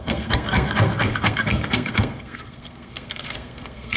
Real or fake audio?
fake